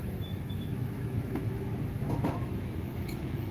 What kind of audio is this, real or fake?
fake